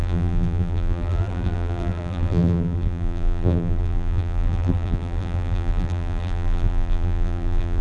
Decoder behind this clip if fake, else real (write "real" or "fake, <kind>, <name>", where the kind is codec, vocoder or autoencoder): fake, vocoder, BigVGAN v2